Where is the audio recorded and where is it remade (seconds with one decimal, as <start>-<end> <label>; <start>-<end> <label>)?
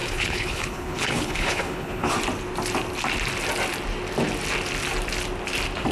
0.0-2.1 remade; 2.1-5.9 recorded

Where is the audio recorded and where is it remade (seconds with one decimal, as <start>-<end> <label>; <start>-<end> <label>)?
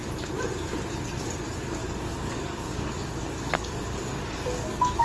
0.0-1.8 recorded; 1.8-5.0 remade